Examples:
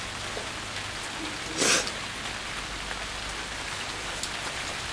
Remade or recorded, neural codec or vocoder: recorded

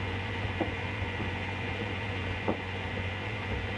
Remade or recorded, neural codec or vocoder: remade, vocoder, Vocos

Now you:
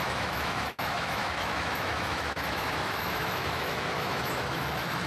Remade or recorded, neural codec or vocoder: remade, autoencoder, DAC-VAE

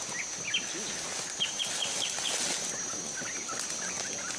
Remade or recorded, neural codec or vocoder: recorded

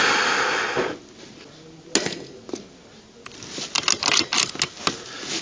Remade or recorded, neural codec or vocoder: recorded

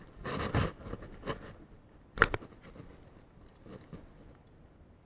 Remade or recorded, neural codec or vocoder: recorded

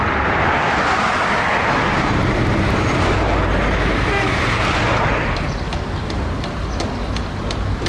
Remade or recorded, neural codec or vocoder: recorded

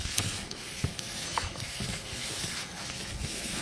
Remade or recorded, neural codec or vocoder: remade, codec, SNAC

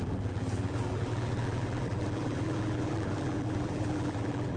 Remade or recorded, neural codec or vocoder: remade, vocoder, BigVGAN v2